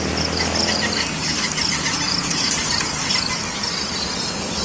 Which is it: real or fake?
real